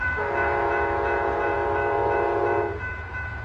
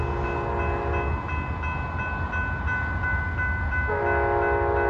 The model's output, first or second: first